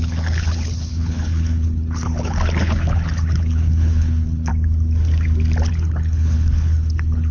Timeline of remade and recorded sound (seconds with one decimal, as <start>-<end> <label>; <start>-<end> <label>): 0.0-4.5 remade; 4.5-5.7 recorded; 5.7-7.3 remade